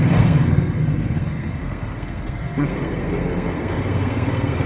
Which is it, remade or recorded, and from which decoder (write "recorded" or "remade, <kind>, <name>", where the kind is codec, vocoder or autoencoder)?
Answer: remade, codec, SNAC